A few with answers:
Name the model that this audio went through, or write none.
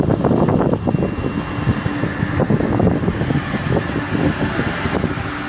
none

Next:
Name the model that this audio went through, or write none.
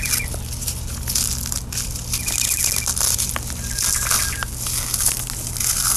none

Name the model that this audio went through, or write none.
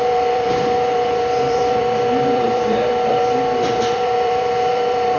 vocoder, BigVGAN v2